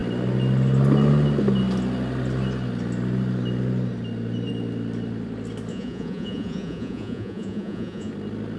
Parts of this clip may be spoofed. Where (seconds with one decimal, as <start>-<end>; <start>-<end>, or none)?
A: 5.7-8.1